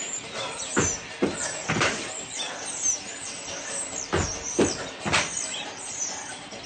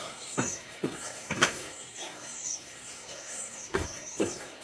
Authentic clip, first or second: first